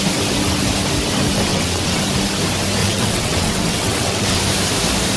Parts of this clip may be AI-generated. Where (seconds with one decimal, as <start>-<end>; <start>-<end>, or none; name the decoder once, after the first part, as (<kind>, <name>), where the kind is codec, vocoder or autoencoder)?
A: 1.5-2.0 (vocoder, WaveNeXt); 2.8-4.4